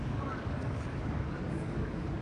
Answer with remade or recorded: remade